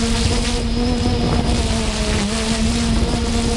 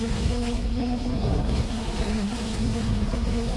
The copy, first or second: second